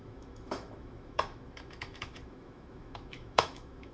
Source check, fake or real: fake